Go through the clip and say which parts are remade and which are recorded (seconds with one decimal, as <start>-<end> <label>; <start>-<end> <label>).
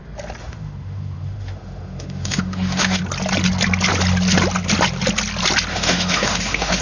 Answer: 0.0-0.4 recorded; 0.4-3.0 remade; 3.0-5.7 recorded; 5.7-6.8 remade